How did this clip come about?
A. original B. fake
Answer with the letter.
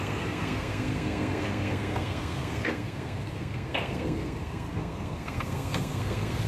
B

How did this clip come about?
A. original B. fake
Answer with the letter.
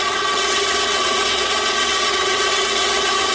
B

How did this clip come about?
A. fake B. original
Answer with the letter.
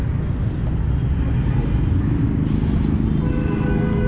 B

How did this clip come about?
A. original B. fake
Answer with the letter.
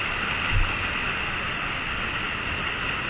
A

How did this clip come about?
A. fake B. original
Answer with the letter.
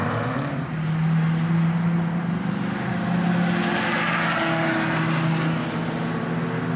B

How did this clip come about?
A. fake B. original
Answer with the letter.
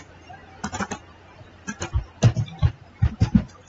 A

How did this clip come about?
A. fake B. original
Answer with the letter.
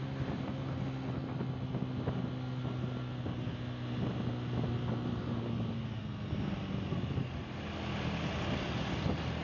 B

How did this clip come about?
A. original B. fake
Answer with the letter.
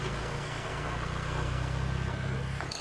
B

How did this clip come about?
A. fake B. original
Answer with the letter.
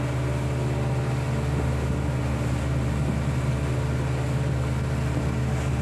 B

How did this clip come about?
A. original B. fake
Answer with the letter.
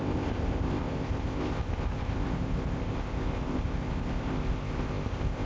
B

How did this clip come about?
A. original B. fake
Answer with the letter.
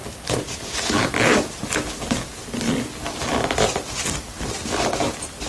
A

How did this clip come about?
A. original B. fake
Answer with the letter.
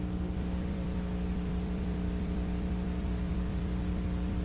B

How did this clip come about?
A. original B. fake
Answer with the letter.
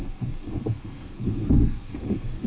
B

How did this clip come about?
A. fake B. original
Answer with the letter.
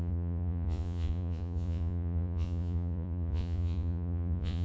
A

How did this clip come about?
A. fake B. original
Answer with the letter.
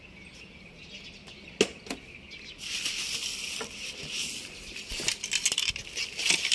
B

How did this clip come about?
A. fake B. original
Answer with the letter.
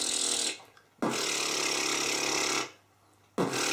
B